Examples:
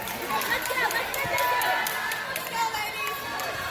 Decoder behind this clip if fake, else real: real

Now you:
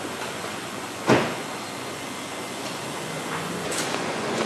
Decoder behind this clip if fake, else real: fake, vocoder, Vocos